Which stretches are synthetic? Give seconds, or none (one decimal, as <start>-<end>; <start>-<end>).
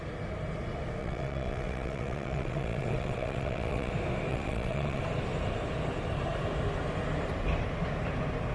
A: 1.0-3.9; 4.3-5.0